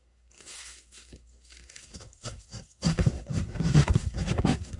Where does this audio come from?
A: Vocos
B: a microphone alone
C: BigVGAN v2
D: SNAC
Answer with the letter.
D